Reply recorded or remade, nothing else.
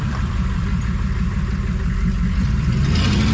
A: remade